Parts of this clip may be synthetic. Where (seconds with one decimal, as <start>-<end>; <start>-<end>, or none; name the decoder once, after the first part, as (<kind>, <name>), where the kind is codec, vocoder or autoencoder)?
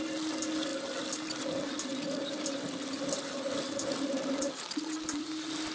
none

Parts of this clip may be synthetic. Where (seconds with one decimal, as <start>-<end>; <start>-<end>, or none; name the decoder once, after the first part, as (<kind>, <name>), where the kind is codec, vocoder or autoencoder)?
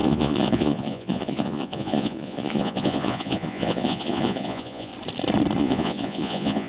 0.0-4.9 (vocoder, Vocos); 5.6-6.7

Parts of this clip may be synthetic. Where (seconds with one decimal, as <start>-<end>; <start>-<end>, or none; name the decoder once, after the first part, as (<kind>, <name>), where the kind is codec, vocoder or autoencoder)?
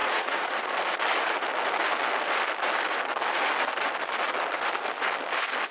0.0-0.7 (vocoder, Vocos)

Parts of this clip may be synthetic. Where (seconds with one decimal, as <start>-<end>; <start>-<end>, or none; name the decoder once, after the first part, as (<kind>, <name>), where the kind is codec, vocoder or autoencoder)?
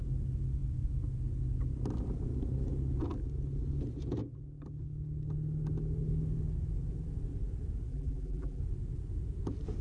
7.9-8.6 (vocoder, BigVGAN v2)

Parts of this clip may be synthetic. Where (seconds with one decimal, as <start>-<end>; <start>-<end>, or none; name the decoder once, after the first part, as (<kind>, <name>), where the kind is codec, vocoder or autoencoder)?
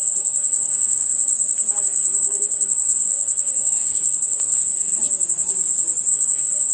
0.0-1.3 (codec, SNAC); 1.8-4.9; 6.1-6.7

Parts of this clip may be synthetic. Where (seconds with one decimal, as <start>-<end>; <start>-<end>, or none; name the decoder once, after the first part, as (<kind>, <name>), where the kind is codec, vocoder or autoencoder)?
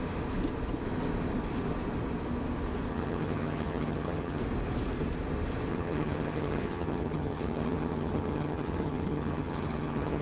2.9-4.4 (vocoder, HiFi-GAN); 5.7-10.2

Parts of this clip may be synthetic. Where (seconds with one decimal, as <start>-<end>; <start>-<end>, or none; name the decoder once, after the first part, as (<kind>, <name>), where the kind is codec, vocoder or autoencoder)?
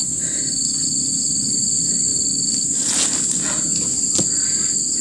none